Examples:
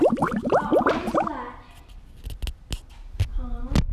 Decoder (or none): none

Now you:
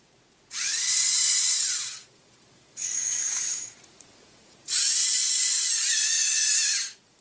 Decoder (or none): vocoder, Vocos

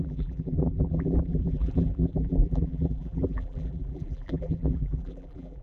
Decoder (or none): vocoder, BigVGAN v2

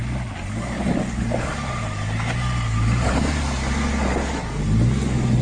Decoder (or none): none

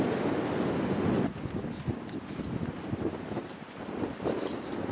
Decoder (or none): none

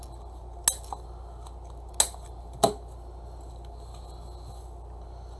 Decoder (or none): none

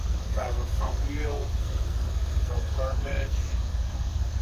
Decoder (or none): codec, SNAC